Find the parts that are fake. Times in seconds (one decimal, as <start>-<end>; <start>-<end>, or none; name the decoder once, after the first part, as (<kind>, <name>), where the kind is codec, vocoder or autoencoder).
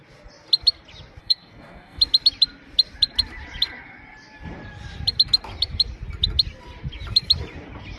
1.2-2.0 (codec, SNAC)